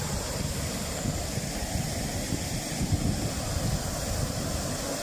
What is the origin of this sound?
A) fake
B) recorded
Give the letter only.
B